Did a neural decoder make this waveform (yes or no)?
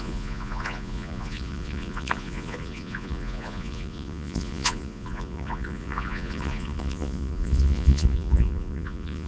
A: yes